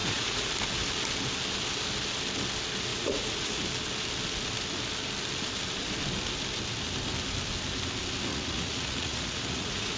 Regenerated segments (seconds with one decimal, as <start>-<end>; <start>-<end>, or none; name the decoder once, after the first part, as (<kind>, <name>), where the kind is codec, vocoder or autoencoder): 0.0-0.5 (vocoder, Vocos); 2.9-3.6; 8.3-10.0